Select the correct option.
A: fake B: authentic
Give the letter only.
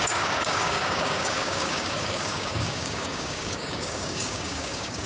A